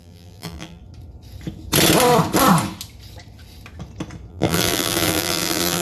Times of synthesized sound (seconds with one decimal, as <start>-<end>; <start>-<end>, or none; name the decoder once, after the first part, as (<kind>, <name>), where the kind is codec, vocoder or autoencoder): 0.0-0.8 (vocoder, BigVGAN v2); 4.3-5.8